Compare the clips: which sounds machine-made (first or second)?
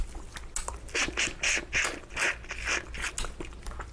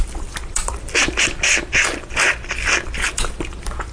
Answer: second